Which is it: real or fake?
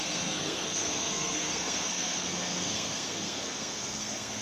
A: fake